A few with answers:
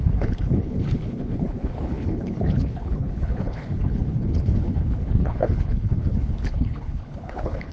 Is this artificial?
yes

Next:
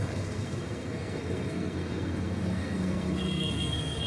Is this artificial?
yes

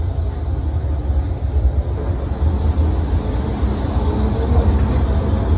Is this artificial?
no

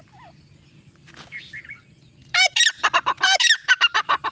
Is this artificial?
no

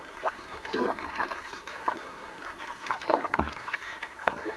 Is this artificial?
yes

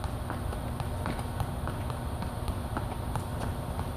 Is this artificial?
no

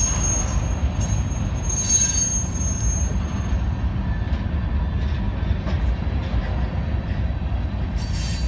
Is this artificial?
no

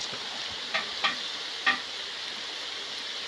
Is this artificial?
no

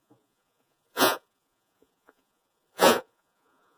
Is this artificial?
yes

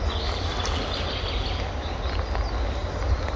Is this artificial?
no